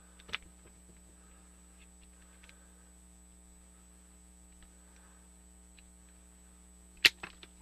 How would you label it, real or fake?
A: real